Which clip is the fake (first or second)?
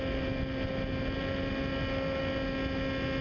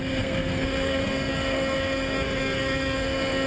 second